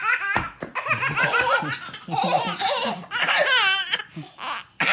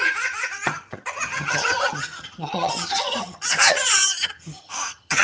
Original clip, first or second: first